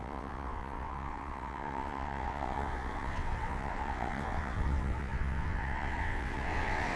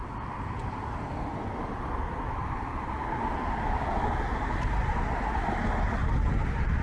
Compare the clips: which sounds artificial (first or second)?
first